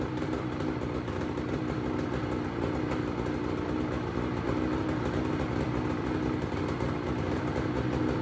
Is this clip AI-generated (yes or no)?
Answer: no